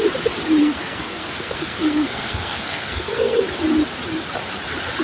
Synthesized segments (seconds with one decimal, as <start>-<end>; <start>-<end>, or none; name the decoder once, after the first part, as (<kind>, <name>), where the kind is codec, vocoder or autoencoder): 0.6-3.4 (codec, SNAC)